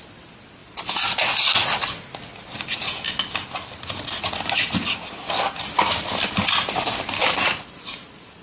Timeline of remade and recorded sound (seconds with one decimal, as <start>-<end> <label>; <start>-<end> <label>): 0.0-0.6 recorded; 0.6-1.2 remade; 1.2-7.2 recorded; 7.2-8.4 remade

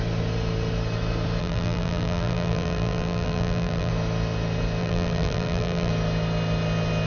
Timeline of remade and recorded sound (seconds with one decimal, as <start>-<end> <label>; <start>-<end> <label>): 0.0-1.4 recorded; 1.4-3.9 remade; 3.9-4.8 recorded; 4.8-5.9 remade; 5.9-7.1 recorded

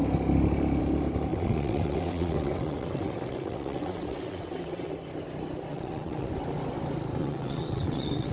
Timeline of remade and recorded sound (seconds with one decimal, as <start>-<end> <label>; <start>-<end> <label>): 0.0-1.3 recorded; 1.3-4.9 remade; 4.9-5.7 recorded; 5.7-6.3 remade; 6.3-7.2 recorded; 7.2-8.3 remade

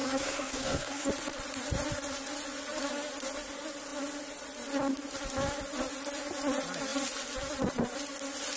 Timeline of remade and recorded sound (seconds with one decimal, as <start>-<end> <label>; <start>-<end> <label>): 0.0-1.1 remade; 1.1-8.6 recorded

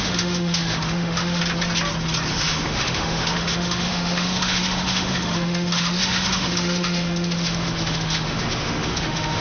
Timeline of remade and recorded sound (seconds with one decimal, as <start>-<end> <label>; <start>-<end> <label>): 0.0-1.4 remade; 1.4-2.3 recorded; 2.3-9.4 remade

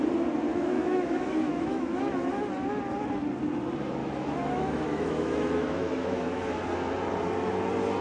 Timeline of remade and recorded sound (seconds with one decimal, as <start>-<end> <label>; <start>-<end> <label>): 0.0-0.5 recorded; 0.5-2.0 remade; 2.0-4.0 recorded; 4.0-6.6 remade; 6.6-8.0 recorded

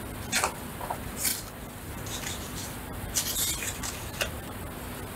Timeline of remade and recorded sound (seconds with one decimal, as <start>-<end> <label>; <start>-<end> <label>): 0.0-5.2 recorded